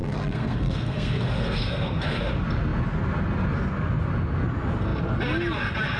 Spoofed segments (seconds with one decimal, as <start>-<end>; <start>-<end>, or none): 0.0-2.2